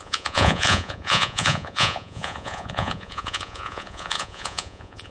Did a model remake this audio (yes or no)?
yes